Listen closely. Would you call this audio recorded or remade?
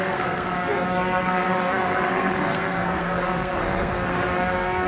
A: remade